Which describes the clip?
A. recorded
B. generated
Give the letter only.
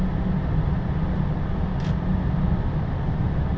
A